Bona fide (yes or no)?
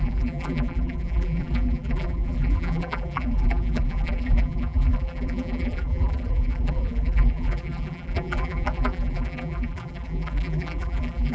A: no